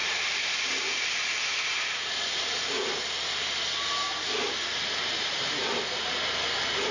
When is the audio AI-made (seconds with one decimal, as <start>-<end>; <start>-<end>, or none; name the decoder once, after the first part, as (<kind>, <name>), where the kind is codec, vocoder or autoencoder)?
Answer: 0.0-1.1 (vocoder, BigVGAN v2); 1.5-3.2